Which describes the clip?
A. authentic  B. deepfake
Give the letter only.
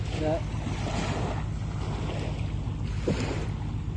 A